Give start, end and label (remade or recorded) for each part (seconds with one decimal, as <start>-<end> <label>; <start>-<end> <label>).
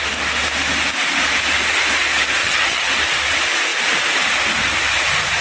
0.0-2.4 recorded; 2.4-2.9 remade; 2.9-5.4 recorded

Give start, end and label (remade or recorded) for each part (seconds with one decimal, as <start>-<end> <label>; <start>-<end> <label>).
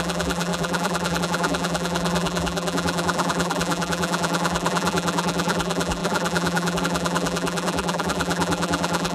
0.0-9.1 remade